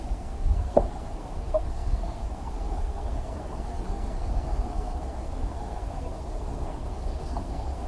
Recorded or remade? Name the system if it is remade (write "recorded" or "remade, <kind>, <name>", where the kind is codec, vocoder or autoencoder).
remade, codec, SNAC